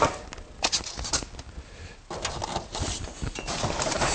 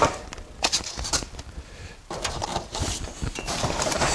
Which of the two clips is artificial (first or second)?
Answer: second